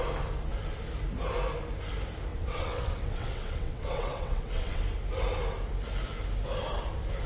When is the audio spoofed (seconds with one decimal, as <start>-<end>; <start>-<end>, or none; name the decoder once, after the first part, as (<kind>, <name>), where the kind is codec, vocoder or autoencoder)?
2.3-4.8 (vocoder, WaveNeXt)